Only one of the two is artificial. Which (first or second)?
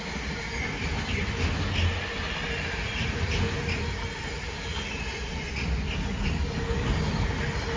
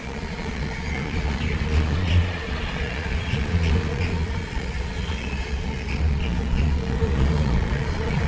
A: second